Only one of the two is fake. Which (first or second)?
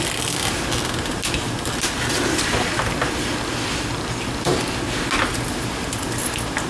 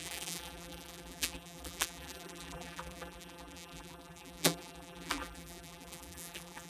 second